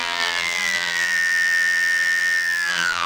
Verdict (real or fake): fake